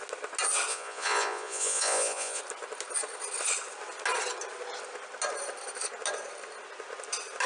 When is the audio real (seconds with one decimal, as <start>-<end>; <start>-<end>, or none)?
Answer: 0.0-0.7; 2.4-7.5